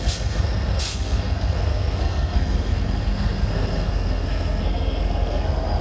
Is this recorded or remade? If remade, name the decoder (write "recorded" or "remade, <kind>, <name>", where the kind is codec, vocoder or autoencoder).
remade, codec, SNAC